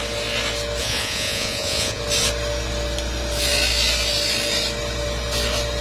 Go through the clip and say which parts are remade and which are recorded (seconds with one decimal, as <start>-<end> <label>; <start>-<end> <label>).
0.0-0.8 recorded; 0.8-2.0 remade; 2.0-5.8 recorded